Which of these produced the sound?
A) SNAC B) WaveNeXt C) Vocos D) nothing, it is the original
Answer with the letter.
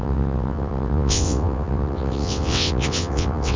B